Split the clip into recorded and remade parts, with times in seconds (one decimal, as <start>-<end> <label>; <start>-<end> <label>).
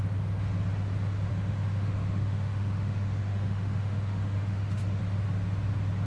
0.0-1.3 recorded; 1.3-5.0 remade; 5.0-6.1 recorded